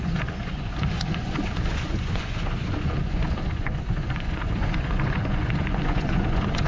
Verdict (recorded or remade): remade